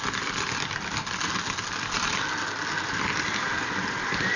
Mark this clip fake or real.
real